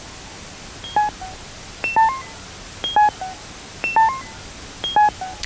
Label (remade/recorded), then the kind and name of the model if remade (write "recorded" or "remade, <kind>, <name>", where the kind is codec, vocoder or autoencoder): recorded